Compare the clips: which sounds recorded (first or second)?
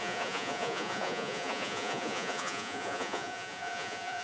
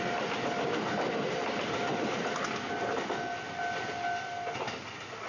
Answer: second